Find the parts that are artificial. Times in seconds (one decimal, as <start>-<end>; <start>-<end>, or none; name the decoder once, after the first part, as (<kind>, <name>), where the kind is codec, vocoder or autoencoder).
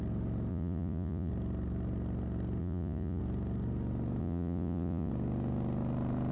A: 0.5-1.3 (vocoder, Vocos); 2.6-3.2; 4.2-5.1